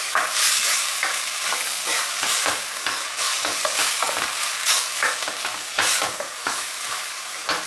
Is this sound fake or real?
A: fake